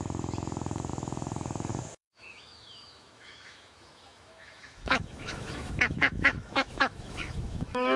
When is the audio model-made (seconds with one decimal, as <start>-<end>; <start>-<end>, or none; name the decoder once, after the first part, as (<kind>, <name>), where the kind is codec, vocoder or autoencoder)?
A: 0.0-8.0 (autoencoder, DAC-VAE)